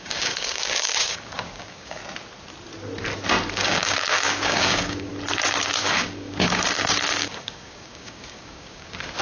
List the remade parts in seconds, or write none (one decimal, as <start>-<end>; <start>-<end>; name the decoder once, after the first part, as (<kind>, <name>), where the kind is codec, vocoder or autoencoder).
0.0-2.0 (codec, DAC); 3.5-5.1; 5.8-9.2